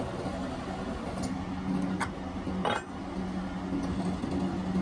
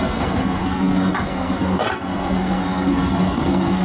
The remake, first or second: second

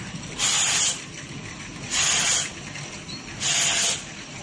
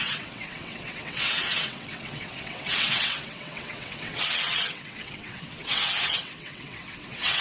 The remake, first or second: second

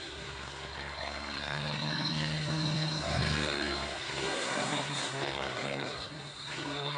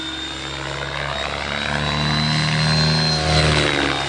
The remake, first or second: first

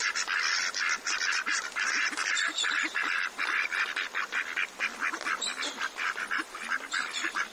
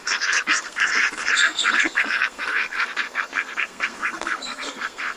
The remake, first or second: second